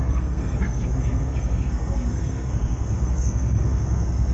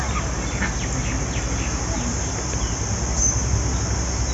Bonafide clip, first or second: second